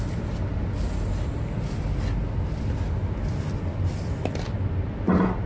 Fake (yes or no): no